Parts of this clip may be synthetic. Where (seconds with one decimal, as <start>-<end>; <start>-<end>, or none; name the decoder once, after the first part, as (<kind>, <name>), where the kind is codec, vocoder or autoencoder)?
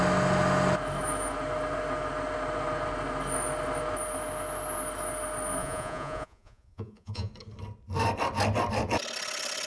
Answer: 5.6-7.3 (vocoder, Vocos)